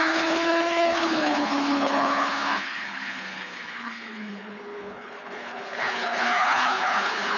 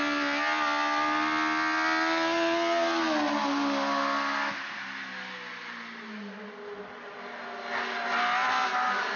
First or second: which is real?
second